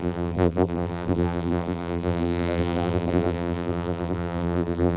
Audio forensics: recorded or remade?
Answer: remade